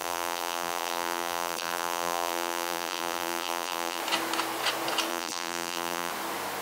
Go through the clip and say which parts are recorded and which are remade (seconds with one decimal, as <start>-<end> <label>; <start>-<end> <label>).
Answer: 0.0-4.0 remade; 4.0-5.1 recorded; 5.1-6.1 remade; 6.1-6.6 recorded